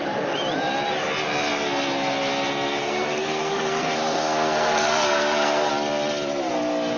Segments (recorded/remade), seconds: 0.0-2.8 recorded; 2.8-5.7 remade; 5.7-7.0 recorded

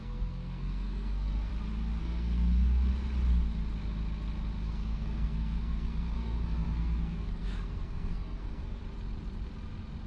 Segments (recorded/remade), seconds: 0.0-1.5 remade; 1.5-2.0 recorded; 2.0-2.9 remade; 2.9-4.6 recorded; 4.6-8.8 remade; 8.8-10.1 recorded

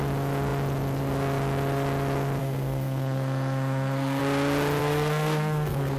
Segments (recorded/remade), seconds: 0.0-2.4 recorded; 2.4-4.2 remade; 4.2-4.8 recorded; 4.8-6.0 remade

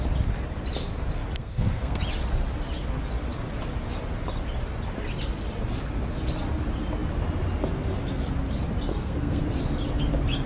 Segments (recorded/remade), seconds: 0.0-1.4 recorded; 1.4-2.0 remade; 2.0-8.9 recorded; 8.9-9.4 remade; 9.4-10.5 recorded

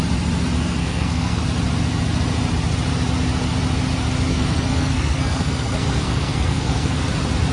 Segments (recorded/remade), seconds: 0.0-0.8 recorded; 0.8-1.4 remade; 1.4-4.3 recorded; 4.3-7.0 remade; 7.0-7.5 recorded

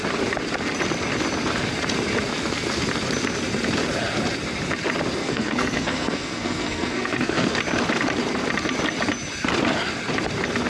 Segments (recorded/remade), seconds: 0.0-5.2 recorded; 5.2-7.6 remade; 7.6-10.7 recorded

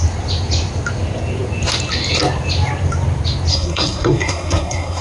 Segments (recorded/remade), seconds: 0.0-3.5 recorded; 3.5-5.0 remade